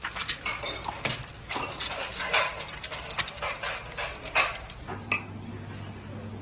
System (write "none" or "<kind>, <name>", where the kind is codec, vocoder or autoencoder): none